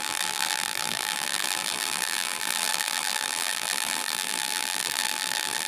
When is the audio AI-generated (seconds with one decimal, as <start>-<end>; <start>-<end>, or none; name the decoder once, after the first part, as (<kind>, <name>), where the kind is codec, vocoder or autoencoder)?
0.0-5.7 (vocoder, BigVGAN v2)